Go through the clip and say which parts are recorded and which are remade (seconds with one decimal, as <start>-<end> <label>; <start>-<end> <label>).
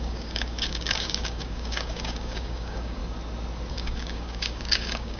0.0-3.0 remade; 3.0-3.7 recorded; 3.7-5.2 remade